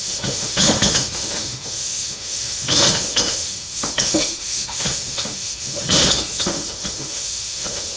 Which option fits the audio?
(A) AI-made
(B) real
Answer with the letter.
A